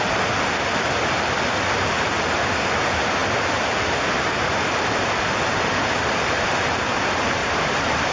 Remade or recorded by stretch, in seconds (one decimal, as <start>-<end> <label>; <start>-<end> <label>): 0.0-7.4 recorded; 7.4-8.1 remade